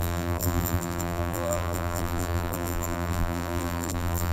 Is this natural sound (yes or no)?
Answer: no